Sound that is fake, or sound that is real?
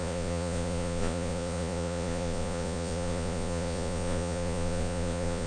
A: fake